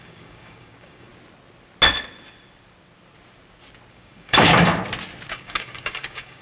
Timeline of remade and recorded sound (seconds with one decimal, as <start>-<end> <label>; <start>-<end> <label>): 0.0-1.1 remade; 1.1-3.9 recorded; 3.9-4.7 remade; 4.7-5.3 recorded; 5.3-6.4 remade